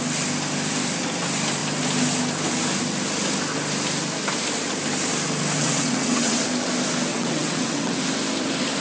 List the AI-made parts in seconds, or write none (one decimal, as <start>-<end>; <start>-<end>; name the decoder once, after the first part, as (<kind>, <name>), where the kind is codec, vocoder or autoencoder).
5.6-6.4 (vocoder, WaveNeXt); 7.1-8.0